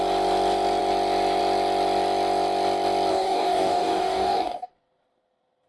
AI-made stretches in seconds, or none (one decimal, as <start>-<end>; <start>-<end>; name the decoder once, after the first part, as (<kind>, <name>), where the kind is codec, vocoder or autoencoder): 3.1-4.7 (codec, DAC)